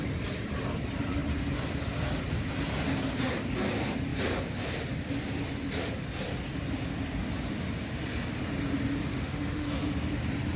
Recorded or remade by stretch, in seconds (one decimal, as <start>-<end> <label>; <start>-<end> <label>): 0.0-9.1 recorded; 9.1-9.7 remade; 9.7-10.6 recorded